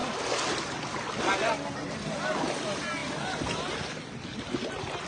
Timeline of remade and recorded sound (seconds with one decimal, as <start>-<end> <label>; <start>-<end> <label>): 0.0-5.1 recorded